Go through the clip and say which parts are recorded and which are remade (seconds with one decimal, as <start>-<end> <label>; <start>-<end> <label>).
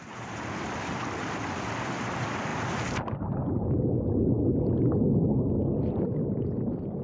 0.0-7.0 recorded